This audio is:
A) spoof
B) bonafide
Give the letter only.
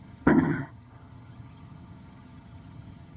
A